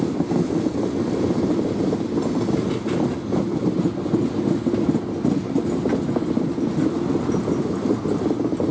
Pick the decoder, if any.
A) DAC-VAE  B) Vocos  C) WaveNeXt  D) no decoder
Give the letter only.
D